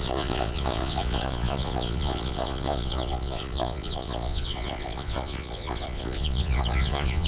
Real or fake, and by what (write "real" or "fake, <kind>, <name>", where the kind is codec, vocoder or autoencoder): fake, vocoder, Vocos